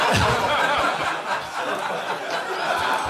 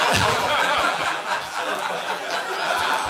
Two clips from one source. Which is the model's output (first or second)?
second